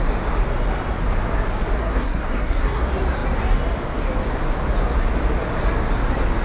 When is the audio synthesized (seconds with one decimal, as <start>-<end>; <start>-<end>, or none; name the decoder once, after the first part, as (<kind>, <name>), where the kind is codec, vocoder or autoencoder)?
1.8-2.8 (codec, SNAC)